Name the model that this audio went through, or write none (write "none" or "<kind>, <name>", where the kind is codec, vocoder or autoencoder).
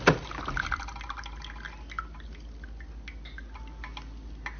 none